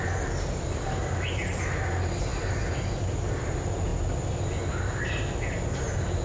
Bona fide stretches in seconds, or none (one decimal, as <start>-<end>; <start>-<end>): 0.0-6.2